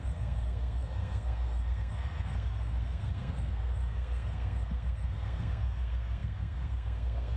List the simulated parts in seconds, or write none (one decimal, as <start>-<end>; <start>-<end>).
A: 0.0-7.4